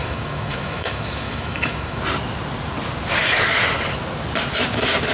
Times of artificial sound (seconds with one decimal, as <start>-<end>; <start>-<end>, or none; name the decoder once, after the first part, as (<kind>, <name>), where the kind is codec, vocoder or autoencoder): 0.0-2.0 (autoencoder, DAC-VAE)